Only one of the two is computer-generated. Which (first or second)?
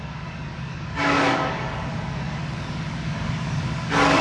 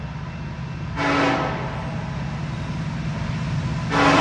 first